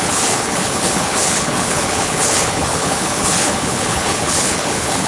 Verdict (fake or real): fake